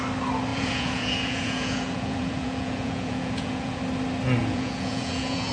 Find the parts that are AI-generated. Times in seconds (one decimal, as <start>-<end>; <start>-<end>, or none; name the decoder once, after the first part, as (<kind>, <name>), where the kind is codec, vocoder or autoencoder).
0.5-3.8 (vocoder, Vocos); 4.4-5.5